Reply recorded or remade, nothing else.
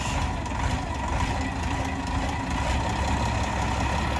recorded